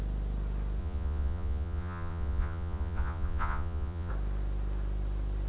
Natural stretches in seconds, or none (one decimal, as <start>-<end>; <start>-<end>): 0.0-0.8; 4.1-5.5